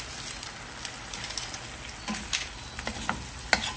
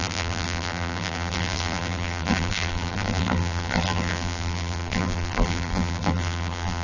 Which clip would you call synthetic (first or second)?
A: second